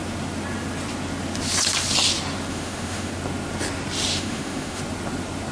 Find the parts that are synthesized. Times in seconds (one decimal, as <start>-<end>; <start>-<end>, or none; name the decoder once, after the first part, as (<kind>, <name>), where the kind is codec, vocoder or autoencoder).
2.5-3.1 (autoencoder, DAC-VAE); 4.1-4.8